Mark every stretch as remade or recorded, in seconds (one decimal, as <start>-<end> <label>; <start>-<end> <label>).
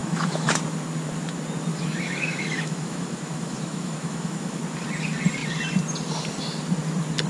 0.0-0.6 remade; 0.6-1.7 recorded; 1.7-4.6 remade; 4.6-7.3 recorded